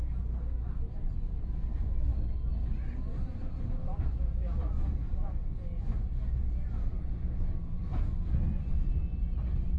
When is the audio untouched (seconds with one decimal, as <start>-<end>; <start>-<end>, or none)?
0.0-3.4; 8.2-9.8